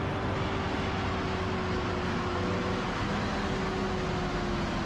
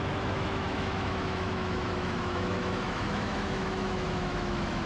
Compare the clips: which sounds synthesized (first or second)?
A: second